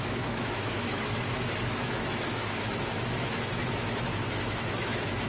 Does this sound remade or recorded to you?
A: remade